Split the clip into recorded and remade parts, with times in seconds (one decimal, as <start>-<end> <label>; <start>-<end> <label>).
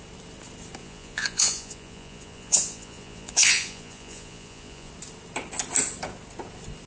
0.0-0.8 recorded; 0.8-4.9 remade; 4.9-6.9 recorded